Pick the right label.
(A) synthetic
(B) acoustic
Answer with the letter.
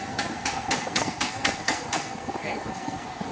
A